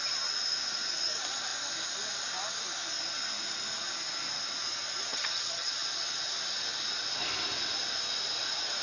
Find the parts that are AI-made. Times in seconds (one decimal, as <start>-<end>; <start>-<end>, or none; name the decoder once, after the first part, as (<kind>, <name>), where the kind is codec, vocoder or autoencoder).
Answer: 5.1-5.7 (vocoder, HiFi-GAN)